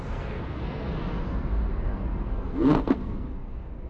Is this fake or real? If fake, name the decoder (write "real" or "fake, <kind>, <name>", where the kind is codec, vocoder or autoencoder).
fake, codec, SNAC